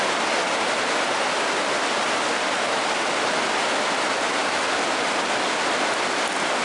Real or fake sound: real